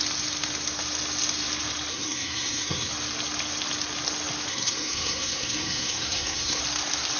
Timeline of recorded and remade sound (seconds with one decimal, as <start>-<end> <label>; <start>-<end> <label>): 0.0-1.9 recorded; 1.9-2.9 remade; 2.9-4.5 recorded; 4.5-6.6 remade; 6.6-7.2 recorded